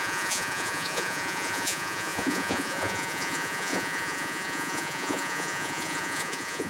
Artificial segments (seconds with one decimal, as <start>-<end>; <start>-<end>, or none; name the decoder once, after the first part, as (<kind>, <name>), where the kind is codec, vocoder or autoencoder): 0.0-6.7 (vocoder, Vocos)